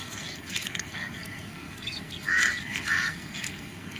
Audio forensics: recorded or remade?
remade